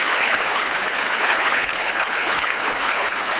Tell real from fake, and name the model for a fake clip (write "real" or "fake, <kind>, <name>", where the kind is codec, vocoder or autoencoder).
fake, codec, HILCodec